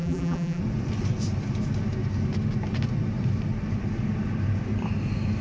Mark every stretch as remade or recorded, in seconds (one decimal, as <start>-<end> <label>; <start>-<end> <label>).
0.0-0.6 remade; 0.6-5.4 recorded